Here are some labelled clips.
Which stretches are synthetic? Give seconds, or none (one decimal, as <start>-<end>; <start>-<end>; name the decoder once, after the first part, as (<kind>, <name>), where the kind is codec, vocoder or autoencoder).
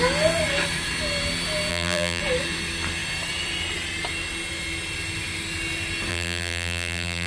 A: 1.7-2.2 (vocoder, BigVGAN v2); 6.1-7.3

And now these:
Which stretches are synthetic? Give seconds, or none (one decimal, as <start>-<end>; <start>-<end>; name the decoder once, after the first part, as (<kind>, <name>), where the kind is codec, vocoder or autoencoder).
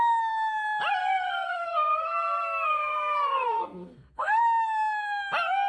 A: 1.0-4.4 (codec, SNAC)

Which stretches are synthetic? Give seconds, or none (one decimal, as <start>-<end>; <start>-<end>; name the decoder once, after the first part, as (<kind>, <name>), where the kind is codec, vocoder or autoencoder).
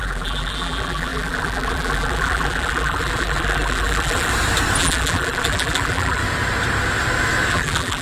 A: 0.0-4.3 (vocoder, BigVGAN v2); 4.8-6.2; 7.5-8.0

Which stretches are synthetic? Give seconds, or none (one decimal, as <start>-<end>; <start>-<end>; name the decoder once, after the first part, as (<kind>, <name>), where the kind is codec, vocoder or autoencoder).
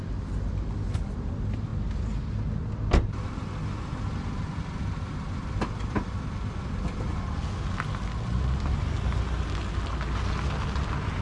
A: none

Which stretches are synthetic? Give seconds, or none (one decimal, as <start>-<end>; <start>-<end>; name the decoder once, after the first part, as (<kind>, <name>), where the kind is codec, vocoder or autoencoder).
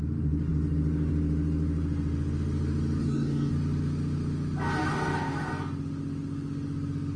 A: 3.0-3.5 (codec, DAC); 4.8-5.5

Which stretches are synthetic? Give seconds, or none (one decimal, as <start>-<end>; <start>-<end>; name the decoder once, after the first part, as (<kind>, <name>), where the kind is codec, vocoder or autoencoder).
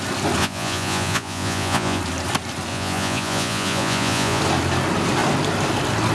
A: 0.4-2.0 (vocoder, Vocos); 2.7-4.4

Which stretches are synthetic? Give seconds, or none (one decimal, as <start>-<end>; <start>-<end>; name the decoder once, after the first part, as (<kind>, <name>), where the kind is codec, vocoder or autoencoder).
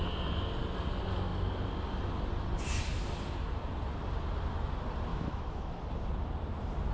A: 5.1-5.8 (autoencoder, DAC-VAE)